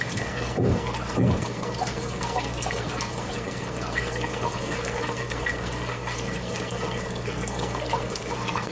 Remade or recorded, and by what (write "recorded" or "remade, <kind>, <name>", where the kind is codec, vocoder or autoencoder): remade, codec, SNAC